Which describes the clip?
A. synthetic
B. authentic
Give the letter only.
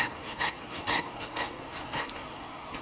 A